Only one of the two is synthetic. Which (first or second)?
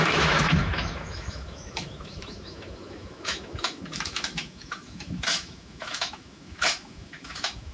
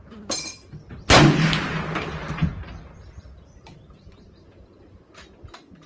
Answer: first